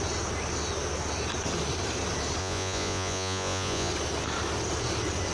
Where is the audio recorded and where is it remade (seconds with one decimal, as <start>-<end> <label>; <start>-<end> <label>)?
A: 0.0-2.4 recorded; 2.4-3.9 remade; 3.9-5.3 recorded